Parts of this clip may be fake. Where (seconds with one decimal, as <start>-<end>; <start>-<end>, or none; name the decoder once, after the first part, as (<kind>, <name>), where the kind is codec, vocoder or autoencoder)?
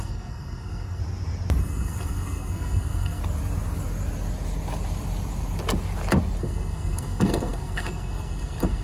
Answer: 0.0-1.0 (codec, SNAC); 1.6-3.2; 6.4-8.8